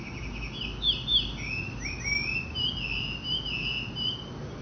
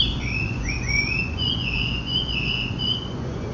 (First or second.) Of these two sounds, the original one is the first